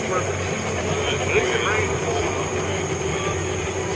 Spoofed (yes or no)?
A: no